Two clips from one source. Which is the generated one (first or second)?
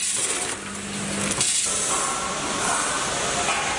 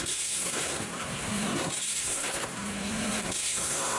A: second